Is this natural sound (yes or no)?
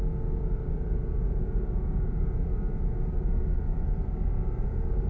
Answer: yes